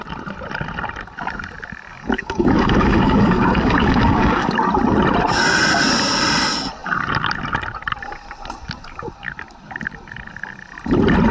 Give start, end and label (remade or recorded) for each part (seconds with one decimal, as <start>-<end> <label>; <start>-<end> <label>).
0.0-1.9 recorded; 1.9-4.5 remade; 4.5-11.3 recorded